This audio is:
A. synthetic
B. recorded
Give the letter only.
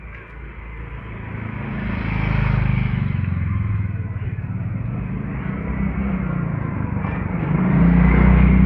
B